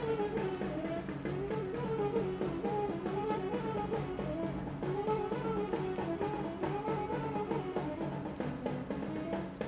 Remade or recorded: recorded